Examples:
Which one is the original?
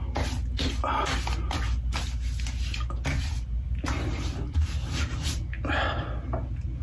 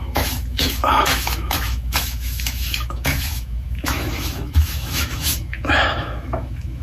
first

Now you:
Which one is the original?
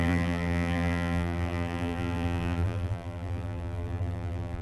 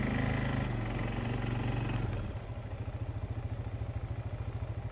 second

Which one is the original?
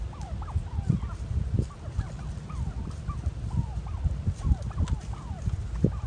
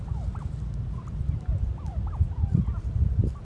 first